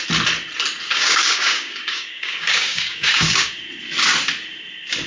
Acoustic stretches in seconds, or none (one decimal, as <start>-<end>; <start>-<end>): 0.0-0.9; 3.6-5.1